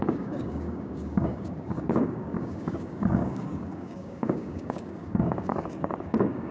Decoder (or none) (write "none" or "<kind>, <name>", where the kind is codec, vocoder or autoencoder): codec, DAC